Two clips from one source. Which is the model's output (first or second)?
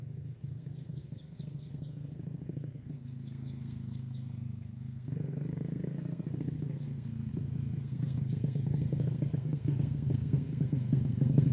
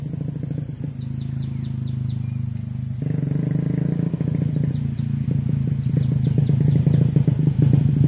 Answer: first